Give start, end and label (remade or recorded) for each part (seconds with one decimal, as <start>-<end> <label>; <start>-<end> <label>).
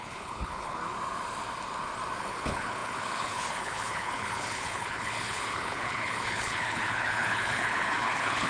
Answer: 0.0-0.8 remade; 0.8-2.2 recorded; 2.2-8.5 remade